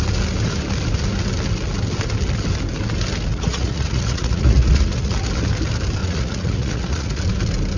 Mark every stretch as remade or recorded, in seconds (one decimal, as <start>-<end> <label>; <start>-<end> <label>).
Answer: 0.0-3.3 recorded; 3.3-5.1 remade; 5.1-6.0 recorded; 6.0-7.2 remade; 7.2-7.8 recorded

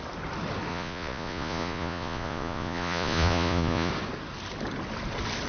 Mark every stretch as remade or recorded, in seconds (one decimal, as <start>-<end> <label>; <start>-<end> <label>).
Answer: 0.0-0.7 recorded; 0.7-3.9 remade; 3.9-5.5 recorded